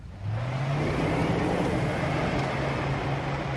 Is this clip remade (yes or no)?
no